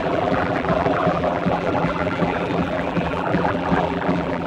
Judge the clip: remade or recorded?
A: remade